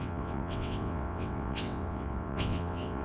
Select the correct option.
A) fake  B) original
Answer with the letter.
A